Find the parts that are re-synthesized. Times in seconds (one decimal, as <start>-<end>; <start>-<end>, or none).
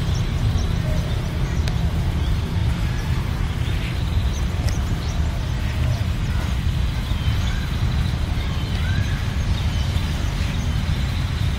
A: 2.6-5.1